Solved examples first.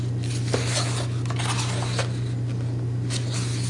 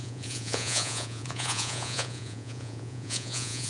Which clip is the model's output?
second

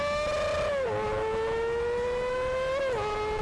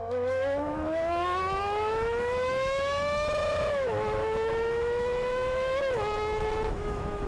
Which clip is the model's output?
second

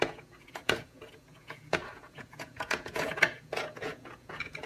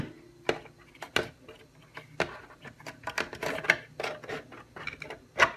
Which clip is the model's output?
first